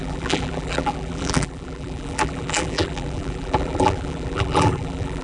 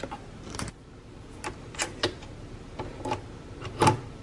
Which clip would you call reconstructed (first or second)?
first